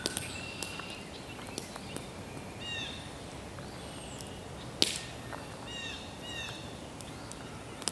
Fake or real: real